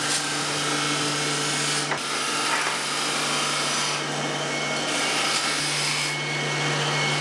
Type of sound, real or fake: real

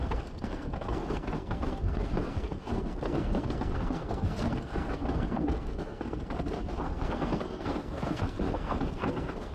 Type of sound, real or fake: fake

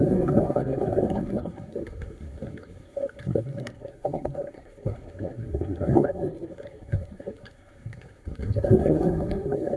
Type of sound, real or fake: fake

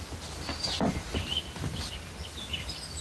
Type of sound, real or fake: real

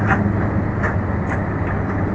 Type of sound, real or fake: real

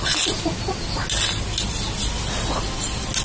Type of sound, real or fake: real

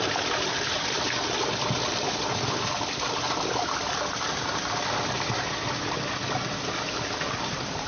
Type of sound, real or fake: real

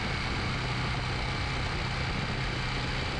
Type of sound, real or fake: real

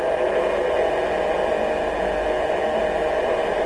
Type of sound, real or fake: real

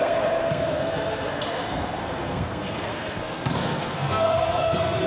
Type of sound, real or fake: fake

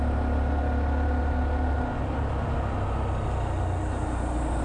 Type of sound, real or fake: real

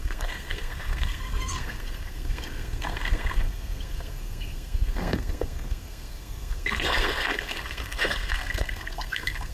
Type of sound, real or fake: fake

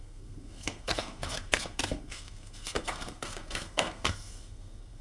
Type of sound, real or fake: fake